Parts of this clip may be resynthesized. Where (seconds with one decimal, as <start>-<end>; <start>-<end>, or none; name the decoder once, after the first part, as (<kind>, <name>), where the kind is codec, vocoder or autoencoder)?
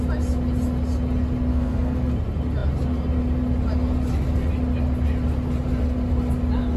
1.5-2.1 (codec, SNAC)